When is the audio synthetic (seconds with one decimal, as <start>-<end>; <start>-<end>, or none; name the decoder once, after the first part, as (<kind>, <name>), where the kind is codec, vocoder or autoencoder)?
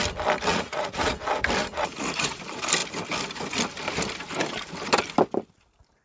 0.5-1.1 (vocoder, Vocos); 1.6-2.4